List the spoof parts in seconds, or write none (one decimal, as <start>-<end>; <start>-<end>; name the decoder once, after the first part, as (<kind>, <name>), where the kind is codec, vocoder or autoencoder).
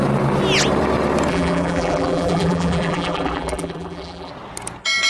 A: 1.3-4.3 (vocoder, BigVGAN v2)